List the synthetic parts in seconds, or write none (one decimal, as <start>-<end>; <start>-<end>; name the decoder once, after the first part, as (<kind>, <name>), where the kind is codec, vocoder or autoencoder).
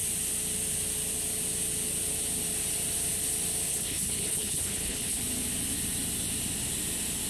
3.7-5.2 (codec, HILCodec)